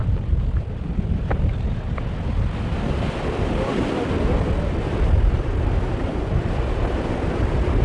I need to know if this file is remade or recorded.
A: recorded